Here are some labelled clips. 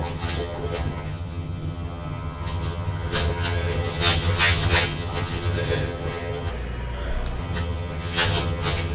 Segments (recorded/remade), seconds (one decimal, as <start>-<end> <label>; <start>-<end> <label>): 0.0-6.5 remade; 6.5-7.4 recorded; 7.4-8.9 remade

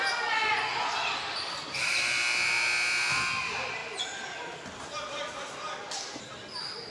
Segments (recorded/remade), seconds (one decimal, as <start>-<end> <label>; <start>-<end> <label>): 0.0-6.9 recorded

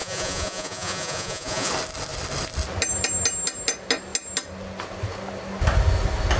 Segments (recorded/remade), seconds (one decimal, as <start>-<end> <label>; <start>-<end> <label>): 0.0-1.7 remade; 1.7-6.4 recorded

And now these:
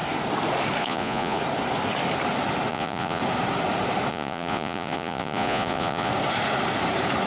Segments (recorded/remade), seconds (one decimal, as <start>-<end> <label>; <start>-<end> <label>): 0.0-0.8 recorded; 0.8-1.4 remade; 1.4-2.7 recorded; 2.7-3.2 remade; 3.2-4.1 recorded; 4.1-6.1 remade; 6.1-7.3 recorded

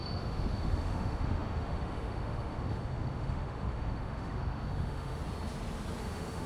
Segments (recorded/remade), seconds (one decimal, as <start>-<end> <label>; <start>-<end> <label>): 0.0-5.2 remade; 5.2-6.0 recorded; 6.0-6.5 remade

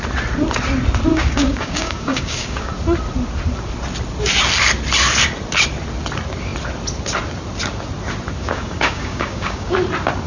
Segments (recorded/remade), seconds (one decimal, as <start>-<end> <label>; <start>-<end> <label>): 0.0-1.1 recorded; 1.1-2.7 remade; 2.7-8.4 recorded; 8.4-9.7 remade; 9.7-10.3 recorded

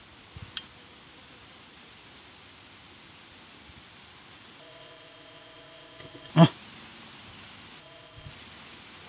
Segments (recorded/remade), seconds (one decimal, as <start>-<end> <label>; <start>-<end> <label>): 0.0-4.6 recorded; 4.6-6.3 remade; 6.3-7.8 recorded; 7.8-8.3 remade; 8.3-9.1 recorded

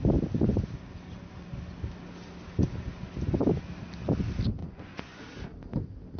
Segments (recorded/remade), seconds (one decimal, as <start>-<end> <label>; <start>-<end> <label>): 0.0-4.6 recorded; 4.6-5.2 remade; 5.2-6.2 recorded